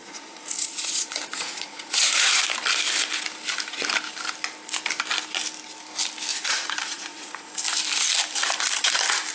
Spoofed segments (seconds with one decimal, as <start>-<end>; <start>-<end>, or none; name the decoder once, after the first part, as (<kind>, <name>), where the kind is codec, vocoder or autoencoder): 0.0-2.3 (vocoder, Vocos); 6.3-7.5